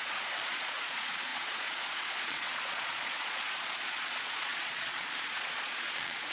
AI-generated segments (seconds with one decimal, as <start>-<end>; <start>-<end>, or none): 0.0-6.3